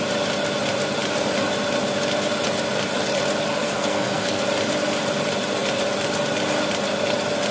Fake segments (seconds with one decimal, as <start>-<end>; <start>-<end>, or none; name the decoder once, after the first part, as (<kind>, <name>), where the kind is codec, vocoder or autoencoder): 3.5-4.4 (codec, SNAC)